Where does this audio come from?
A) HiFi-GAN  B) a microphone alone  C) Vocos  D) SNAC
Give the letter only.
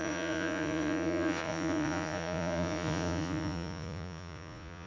C